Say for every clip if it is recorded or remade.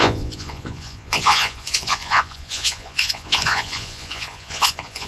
remade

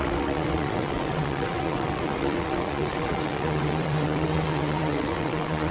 remade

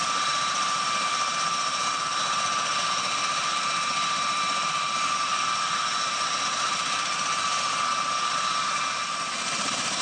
remade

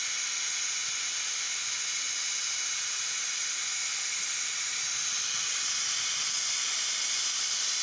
recorded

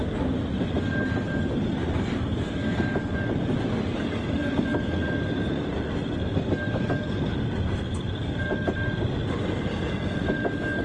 recorded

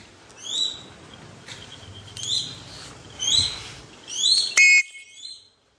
recorded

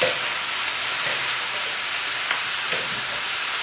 recorded